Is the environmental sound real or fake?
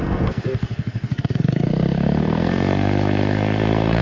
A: fake